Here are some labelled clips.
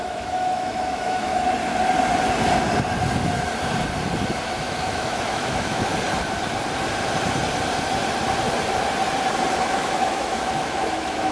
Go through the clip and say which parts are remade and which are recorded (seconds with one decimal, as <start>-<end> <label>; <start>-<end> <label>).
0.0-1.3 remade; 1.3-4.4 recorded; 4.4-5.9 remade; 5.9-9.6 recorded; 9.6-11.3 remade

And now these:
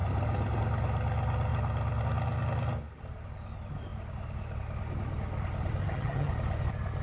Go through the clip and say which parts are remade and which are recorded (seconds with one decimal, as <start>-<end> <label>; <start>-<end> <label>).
0.0-5.8 recorded; 5.8-6.3 remade; 6.3-7.0 recorded

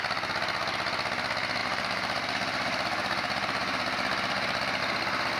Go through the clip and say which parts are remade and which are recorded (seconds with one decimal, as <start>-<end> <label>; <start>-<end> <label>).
0.0-1.6 recorded; 1.6-4.8 remade; 4.8-5.4 recorded